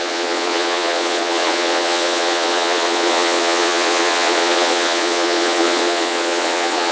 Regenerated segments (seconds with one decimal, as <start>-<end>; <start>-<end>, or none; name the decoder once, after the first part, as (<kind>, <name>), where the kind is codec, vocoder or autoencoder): 0.0-6.9 (vocoder, Vocos)

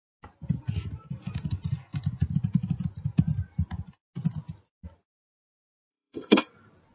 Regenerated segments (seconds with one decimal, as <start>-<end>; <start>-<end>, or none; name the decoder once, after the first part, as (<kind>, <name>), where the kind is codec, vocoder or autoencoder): 5.9-6.4 (codec, SNAC)

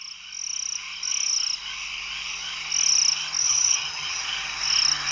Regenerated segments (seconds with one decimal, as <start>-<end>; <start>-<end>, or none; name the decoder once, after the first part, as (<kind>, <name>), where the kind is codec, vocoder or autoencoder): 3.4-4.2 (vocoder, HiFi-GAN)

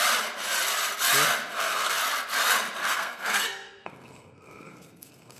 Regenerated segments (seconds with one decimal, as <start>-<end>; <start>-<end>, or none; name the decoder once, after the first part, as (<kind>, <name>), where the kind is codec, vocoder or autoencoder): 1.5-2.0 (codec, SNAC); 2.8-5.4

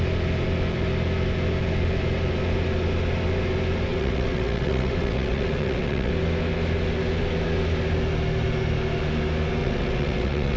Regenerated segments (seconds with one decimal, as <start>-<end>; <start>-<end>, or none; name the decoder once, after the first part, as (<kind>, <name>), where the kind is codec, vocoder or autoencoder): 3.9-6.1 (vocoder, WaveNeXt); 9.6-10.6